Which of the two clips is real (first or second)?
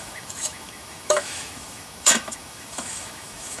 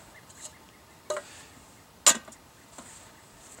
second